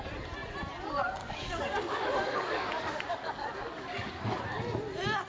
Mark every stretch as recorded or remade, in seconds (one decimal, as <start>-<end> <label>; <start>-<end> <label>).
0.0-1.2 recorded; 1.2-4.4 remade; 4.4-5.3 recorded